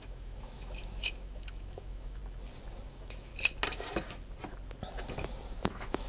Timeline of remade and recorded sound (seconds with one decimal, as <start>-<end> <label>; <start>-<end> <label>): 0.0-2.2 remade; 2.2-2.9 recorded; 2.9-3.3 remade; 3.3-5.5 recorded; 5.5-6.1 remade